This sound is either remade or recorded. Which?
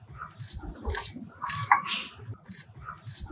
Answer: recorded